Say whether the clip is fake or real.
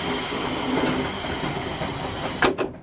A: real